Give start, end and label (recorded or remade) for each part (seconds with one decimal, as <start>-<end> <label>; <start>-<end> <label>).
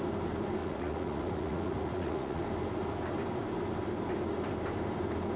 0.0-0.6 recorded; 0.6-2.4 remade; 2.4-5.4 recorded